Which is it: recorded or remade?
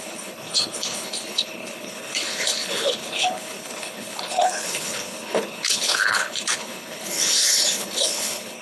remade